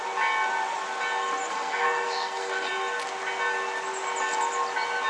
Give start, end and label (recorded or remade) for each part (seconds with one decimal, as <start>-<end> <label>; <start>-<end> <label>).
0.0-1.5 recorded; 1.5-2.7 remade; 2.7-5.1 recorded